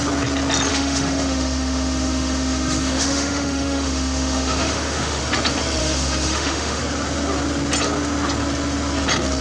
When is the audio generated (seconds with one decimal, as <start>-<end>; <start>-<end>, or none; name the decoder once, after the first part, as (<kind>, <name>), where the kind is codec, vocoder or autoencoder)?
0.7-5.2 (autoencoder, DAC-VAE); 5.8-6.8